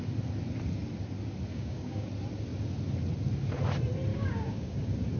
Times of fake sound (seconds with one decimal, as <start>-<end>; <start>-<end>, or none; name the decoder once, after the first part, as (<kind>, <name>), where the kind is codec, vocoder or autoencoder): 1.5-2.1 (codec, DAC); 4.1-4.8